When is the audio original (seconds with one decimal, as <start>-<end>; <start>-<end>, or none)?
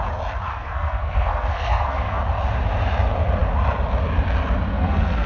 0.0-0.5; 2.2-4.7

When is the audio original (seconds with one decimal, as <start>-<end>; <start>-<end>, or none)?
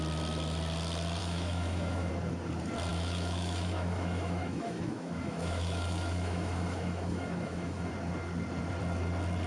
0.0-1.2; 2.1-2.9; 7.9-9.5